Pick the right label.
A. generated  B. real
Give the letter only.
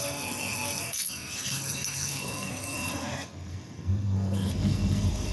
A